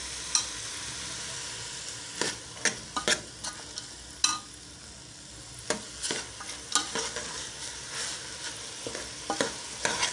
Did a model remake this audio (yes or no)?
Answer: no